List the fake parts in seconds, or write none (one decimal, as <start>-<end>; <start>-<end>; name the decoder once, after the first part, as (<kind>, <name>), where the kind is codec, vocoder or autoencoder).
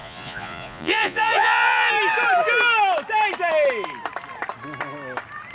0.0-1.9 (vocoder, Vocos)